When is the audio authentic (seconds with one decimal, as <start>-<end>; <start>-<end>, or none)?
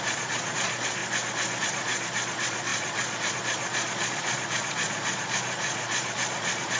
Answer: 1.0-1.6